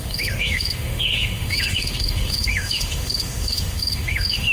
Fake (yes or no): yes